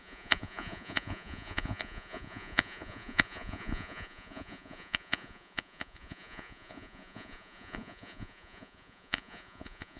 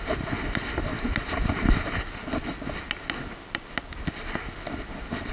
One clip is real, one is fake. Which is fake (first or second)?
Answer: first